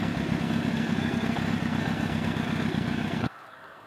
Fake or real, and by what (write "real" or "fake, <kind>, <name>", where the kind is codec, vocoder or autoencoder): fake, codec, SNAC